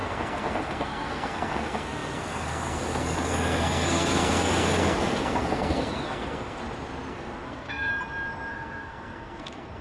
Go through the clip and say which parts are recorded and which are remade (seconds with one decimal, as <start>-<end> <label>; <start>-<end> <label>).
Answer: 0.0-6.6 remade; 6.6-7.1 recorded; 7.1-7.9 remade; 7.9-8.5 recorded; 8.5-9.8 remade